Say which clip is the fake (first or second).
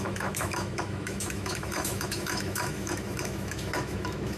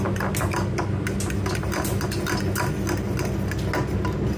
first